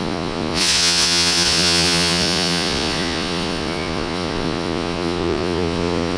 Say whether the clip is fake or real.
fake